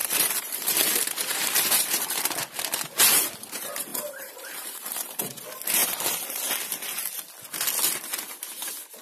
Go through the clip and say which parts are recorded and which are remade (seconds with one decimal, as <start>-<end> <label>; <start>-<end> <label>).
0.0-2.2 remade; 2.2-3.9 recorded; 3.9-5.2 remade; 5.2-9.0 recorded